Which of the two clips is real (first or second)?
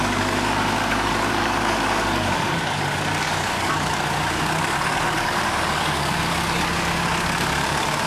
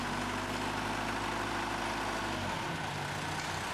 second